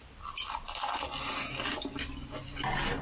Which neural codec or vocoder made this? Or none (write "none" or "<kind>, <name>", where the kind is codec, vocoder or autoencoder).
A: none